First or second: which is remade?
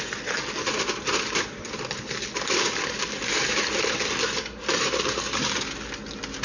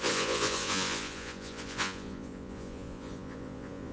second